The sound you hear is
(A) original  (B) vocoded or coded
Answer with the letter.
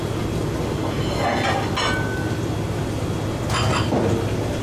A